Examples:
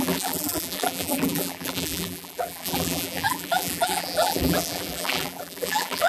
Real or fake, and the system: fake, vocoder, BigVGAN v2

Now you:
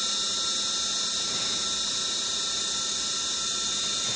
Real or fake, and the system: real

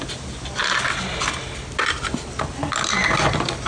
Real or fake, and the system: real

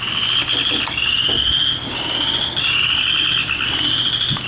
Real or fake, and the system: real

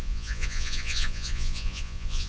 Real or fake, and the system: fake, vocoder, Vocos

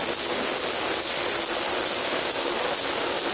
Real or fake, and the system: real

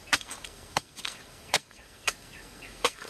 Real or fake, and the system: fake, codec, SNAC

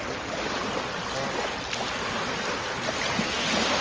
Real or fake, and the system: real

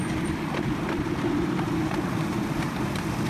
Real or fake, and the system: fake, vocoder, BigVGAN v2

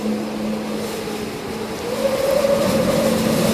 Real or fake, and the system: real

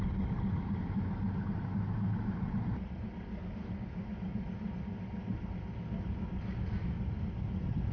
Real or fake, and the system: real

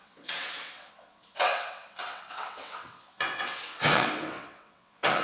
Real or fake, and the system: fake, vocoder, WaveNeXt